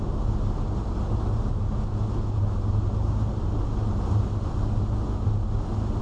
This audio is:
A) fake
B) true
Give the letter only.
B